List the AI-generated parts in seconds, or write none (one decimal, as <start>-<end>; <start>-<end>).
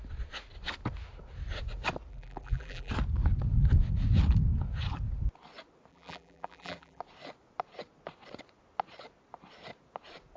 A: 2.1-2.9; 5.9-7.0